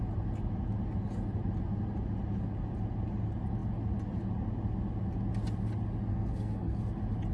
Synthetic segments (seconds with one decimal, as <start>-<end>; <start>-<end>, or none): 6.1-6.8